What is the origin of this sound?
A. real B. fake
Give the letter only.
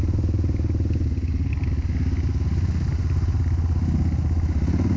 A